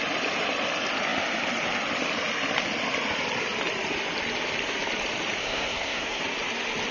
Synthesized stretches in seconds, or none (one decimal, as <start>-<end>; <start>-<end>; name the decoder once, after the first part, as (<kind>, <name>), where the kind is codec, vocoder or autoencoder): 5.4-6.2 (codec, SNAC)